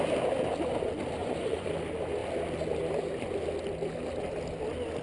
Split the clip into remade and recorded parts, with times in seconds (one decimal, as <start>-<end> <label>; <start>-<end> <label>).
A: 0.0-1.2 recorded; 1.2-1.7 remade; 1.7-5.0 recorded